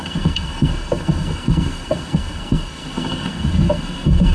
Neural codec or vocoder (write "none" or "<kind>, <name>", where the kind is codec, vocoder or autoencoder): codec, SNAC